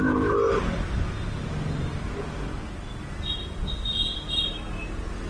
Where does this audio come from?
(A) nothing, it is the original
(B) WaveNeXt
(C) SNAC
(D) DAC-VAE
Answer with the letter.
A